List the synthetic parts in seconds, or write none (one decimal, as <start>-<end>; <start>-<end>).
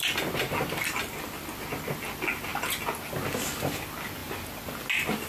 none